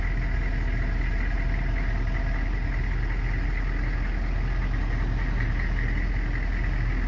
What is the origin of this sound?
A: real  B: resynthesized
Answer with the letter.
A